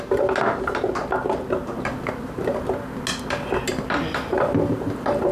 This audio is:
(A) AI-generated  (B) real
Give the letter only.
B